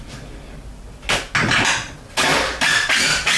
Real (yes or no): yes